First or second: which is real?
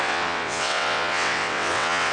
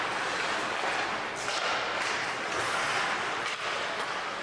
second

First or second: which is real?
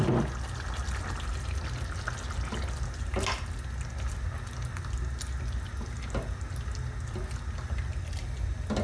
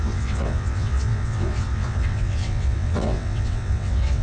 first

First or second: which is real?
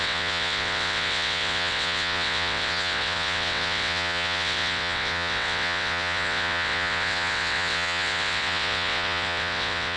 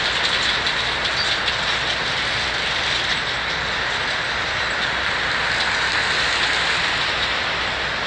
second